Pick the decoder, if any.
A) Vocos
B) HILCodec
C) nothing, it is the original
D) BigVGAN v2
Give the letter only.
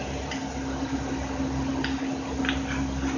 C